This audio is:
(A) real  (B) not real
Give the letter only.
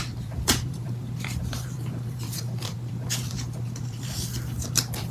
B